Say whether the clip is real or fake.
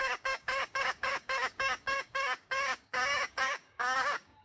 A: fake